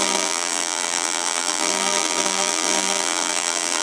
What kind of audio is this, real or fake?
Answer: fake